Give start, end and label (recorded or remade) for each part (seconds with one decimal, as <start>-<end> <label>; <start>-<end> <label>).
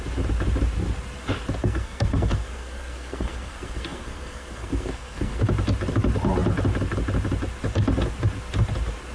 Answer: 0.0-1.6 recorded; 1.6-5.4 remade; 5.4-9.1 recorded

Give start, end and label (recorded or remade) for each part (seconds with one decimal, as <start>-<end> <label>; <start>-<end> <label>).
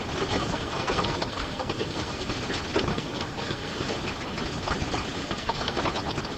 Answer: 0.0-0.4 recorded; 0.4-2.3 remade; 2.3-2.9 recorded; 2.9-3.9 remade; 3.9-5.2 recorded; 5.2-5.8 remade; 5.8-6.4 recorded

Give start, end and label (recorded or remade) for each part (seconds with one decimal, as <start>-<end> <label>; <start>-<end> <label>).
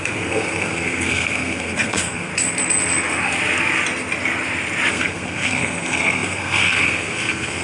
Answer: 0.0-2.3 remade; 2.3-4.9 recorded; 4.9-7.6 remade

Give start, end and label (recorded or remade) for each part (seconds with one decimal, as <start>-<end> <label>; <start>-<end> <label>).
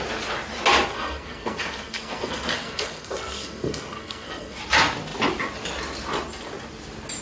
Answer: 0.0-0.9 recorded; 0.9-4.6 remade; 4.6-7.2 recorded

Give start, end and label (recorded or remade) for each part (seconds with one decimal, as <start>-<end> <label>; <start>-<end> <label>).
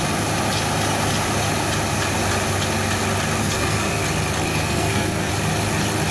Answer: 0.0-3.4 recorded; 3.4-4.0 remade; 4.0-4.5 recorded; 4.5-5.3 remade; 5.3-6.1 recorded